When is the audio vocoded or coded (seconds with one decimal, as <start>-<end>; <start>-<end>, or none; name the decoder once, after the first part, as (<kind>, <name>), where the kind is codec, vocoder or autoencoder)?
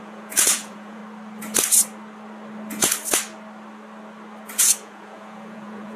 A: 0.0-1.0 (vocoder, Vocos); 4.6-6.0